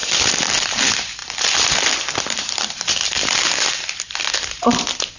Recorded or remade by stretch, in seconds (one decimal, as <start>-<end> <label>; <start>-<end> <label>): 0.0-0.5 remade; 0.5-1.2 recorded; 1.2-4.3 remade; 4.3-5.2 recorded